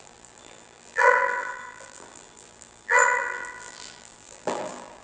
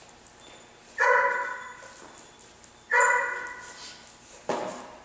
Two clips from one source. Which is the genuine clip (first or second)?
second